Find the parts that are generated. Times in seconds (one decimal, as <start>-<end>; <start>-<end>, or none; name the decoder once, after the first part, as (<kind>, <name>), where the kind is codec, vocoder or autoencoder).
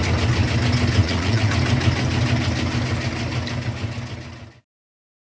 1.0-1.5 (vocoder, Vocos)